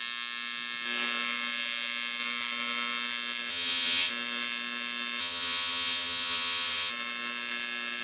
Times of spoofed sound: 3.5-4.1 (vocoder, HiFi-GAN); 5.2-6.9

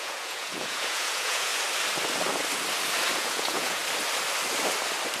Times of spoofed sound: 0.0-1.5 (vocoder, Vocos); 3.2-3.8

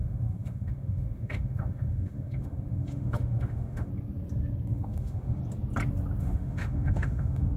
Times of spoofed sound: 0.0-3.9 (autoencoder, DAC-VAE); 4.7-5.4; 6.2-7.6

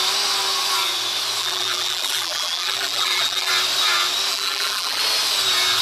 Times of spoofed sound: 1.4-3.5 (vocoder, BigVGAN v2); 4.3-5.0